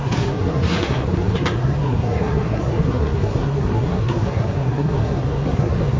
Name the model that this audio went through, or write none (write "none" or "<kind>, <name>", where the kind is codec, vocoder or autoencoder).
codec, SNAC